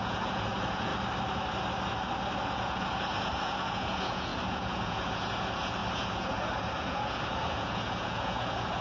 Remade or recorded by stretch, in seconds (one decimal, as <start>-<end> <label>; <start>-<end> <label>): 0.0-0.9 remade; 0.9-2.4 recorded; 2.4-8.8 remade